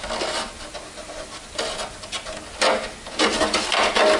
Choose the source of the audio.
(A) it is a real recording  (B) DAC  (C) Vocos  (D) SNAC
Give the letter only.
A